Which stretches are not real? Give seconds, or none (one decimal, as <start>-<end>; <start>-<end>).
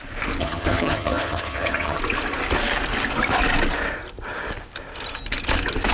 0.4-2.0